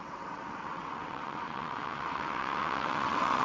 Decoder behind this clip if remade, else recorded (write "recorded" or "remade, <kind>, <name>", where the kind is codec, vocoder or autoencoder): remade, vocoder, WaveNeXt